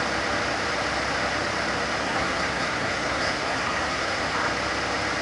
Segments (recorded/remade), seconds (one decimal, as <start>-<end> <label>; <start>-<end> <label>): 0.0-2.0 recorded; 2.0-4.2 remade; 4.2-5.2 recorded